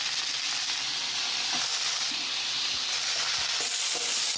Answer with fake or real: real